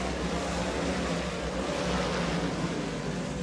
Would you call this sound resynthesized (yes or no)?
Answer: no